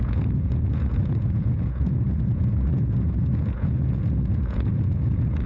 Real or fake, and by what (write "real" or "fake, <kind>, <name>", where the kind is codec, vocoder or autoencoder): fake, vocoder, Vocos